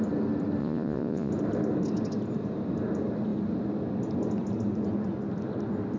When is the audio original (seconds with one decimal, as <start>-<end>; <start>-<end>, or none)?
0.0-0.6; 1.3-6.0